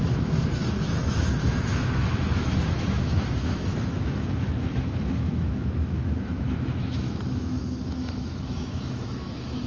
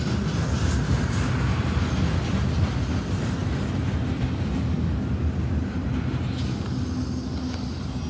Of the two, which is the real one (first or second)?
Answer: second